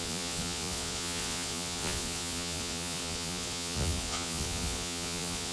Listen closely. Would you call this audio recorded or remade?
remade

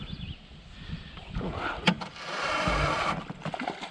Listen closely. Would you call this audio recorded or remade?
recorded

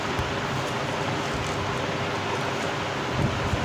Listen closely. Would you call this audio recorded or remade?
recorded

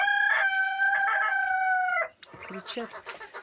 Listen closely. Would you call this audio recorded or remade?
recorded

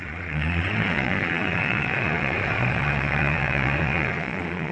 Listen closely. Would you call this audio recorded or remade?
remade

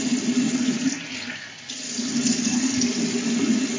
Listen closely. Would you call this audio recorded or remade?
recorded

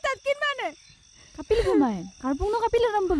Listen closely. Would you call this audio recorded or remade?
recorded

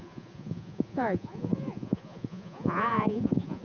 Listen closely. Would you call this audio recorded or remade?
remade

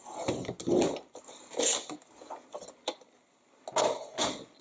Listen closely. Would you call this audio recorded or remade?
recorded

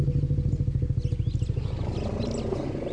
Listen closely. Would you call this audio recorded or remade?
recorded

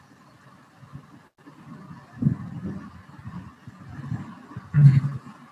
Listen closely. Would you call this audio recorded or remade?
recorded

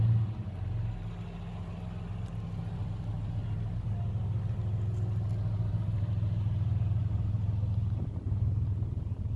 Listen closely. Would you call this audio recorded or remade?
recorded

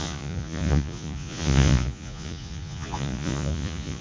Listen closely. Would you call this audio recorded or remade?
remade